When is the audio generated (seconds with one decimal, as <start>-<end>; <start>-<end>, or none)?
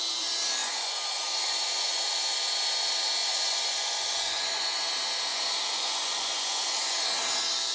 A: 0.6-2.0; 3.2-4.8; 5.3-7.0